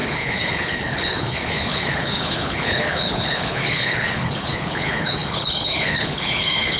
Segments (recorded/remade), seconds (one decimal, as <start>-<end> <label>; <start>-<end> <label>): 0.0-6.8 remade